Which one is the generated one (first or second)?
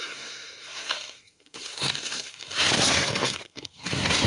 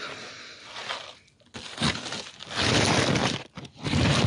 first